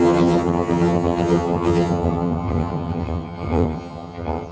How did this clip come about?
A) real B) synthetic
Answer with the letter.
B